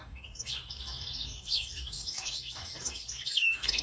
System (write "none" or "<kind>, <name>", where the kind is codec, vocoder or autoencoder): codec, DAC